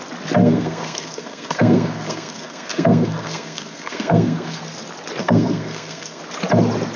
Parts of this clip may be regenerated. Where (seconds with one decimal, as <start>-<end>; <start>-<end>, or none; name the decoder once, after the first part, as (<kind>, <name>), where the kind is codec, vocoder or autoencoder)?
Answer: 0.4-4.6 (codec, SNAC); 5.2-6.2